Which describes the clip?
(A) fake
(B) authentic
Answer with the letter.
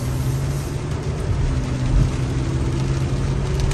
B